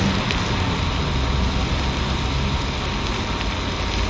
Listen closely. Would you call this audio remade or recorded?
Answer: recorded